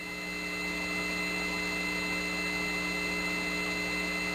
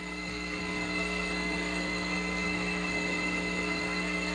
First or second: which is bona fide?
first